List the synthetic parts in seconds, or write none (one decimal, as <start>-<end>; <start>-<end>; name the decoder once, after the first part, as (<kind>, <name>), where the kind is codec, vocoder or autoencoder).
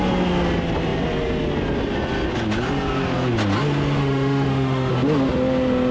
4.0-4.9 (autoencoder, DAC-VAE)